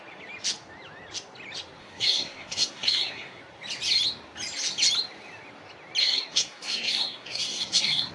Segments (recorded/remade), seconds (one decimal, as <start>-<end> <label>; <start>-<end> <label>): 0.0-1.8 recorded; 1.8-3.4 remade; 3.4-6.0 recorded; 6.0-8.1 remade